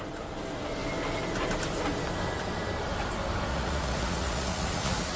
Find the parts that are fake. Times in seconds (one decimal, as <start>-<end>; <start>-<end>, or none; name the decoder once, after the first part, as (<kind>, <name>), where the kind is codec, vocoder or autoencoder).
3.5-5.2 (vocoder, Vocos)

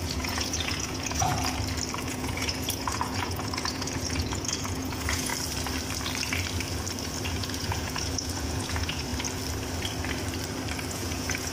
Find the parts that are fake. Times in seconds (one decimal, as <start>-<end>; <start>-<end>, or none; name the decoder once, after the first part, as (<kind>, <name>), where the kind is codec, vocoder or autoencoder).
0.0-1.3 (vocoder, Vocos); 2.0-5.3; 7.3-9.1; 10.9-11.5

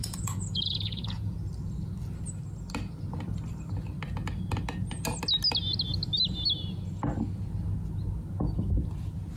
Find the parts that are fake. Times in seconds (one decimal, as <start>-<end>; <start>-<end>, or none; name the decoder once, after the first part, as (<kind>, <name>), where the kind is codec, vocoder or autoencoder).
0.0-1.4 (vocoder, Vocos)

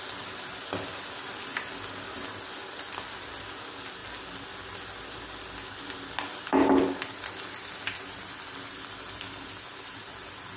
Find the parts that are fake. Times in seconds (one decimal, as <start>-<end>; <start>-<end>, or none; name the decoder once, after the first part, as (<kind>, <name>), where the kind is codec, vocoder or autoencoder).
none

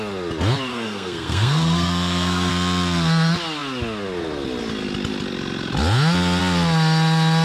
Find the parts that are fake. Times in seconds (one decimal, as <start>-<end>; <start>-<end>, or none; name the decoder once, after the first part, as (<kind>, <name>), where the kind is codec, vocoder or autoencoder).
0.7-2.5 (codec, SNAC)

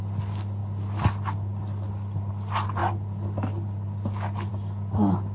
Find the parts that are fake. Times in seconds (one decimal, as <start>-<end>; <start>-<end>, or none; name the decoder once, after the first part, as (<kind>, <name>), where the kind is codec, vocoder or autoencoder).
none

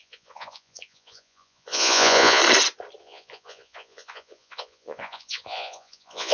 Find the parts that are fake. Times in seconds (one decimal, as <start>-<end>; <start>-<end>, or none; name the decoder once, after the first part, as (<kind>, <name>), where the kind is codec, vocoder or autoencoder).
0.0-2.4 (vocoder, Vocos); 3.0-6.3

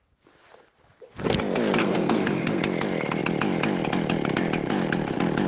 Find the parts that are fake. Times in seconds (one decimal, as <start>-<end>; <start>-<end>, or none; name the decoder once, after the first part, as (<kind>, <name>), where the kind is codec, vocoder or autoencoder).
1.8-2.6 (codec, SNAC)